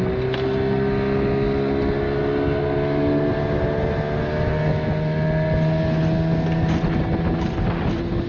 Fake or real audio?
real